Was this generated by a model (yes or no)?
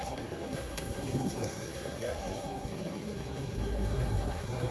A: yes